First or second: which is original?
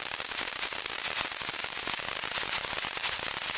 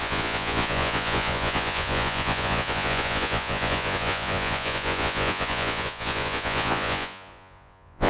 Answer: first